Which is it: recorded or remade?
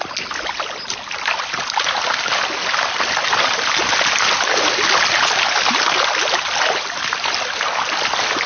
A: recorded